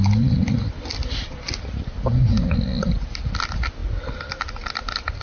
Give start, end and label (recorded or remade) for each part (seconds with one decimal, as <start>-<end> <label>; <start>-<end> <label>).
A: 0.0-5.2 recorded